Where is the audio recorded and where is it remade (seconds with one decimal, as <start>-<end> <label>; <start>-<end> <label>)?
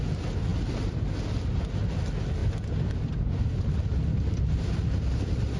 0.0-5.6 recorded